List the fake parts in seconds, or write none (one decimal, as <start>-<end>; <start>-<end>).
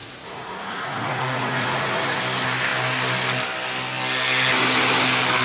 0.0-2.2